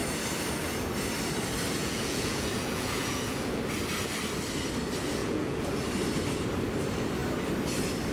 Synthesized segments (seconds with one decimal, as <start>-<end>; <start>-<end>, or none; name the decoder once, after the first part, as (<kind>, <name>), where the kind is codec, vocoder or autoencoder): 1.8-3.6 (vocoder, Vocos); 5.2-5.7